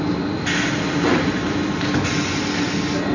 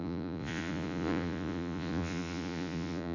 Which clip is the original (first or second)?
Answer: first